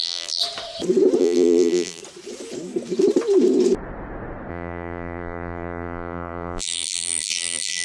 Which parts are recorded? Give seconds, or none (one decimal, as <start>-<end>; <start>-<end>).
0.4-1.2; 2.0-4.5

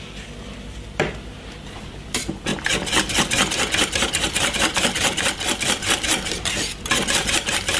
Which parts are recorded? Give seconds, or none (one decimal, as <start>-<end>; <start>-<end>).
2.5-4.5

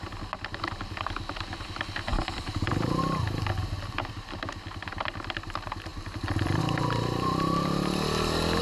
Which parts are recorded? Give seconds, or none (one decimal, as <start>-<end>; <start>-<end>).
0.0-2.1; 3.0-5.9; 6.6-8.6

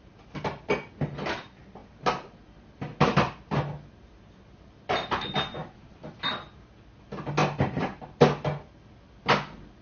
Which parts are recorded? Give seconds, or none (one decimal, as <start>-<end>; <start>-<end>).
0.0-1.8; 3.5-5.6; 6.3-7.4; 8.0-9.8

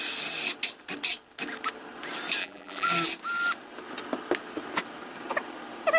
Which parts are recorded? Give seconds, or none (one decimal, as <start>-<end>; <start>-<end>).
0.0-2.4; 2.9-6.0

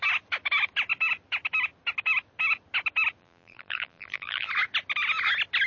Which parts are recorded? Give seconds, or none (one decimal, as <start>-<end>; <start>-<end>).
0.0-3.2; 4.5-5.7

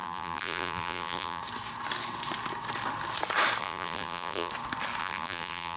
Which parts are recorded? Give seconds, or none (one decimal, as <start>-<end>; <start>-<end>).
1.4-3.6; 4.5-5.0

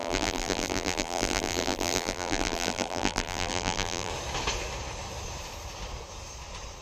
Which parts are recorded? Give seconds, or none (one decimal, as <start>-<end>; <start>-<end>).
4.1-6.8